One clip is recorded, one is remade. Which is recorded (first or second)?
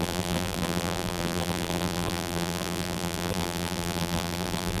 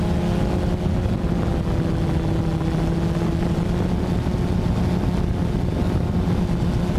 second